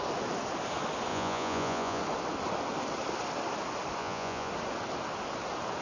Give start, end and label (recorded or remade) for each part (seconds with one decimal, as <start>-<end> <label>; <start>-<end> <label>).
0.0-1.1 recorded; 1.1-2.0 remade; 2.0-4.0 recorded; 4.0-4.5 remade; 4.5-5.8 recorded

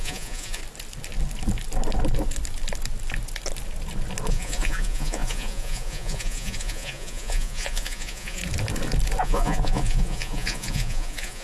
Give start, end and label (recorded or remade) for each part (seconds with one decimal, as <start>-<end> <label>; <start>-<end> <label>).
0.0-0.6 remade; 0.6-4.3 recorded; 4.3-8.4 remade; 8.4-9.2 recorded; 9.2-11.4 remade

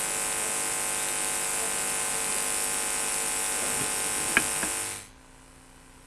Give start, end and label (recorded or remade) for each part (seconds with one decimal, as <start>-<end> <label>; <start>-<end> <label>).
0.0-6.1 recorded

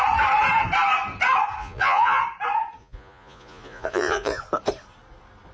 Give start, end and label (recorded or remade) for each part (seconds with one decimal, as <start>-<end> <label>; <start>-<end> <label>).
0.0-1.6 recorded; 1.6-2.2 remade; 2.2-2.8 recorded; 2.8-4.4 remade; 4.4-5.5 recorded

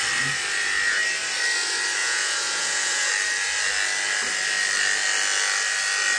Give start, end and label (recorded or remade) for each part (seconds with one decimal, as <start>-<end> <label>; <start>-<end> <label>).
0.0-2.0 recorded; 2.0-3.1 remade; 3.1-6.2 recorded